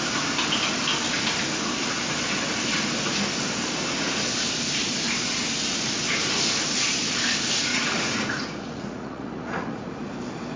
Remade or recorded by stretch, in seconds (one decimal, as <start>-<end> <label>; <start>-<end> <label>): 0.0-7.7 recorded; 7.7-10.0 remade; 10.0-10.6 recorded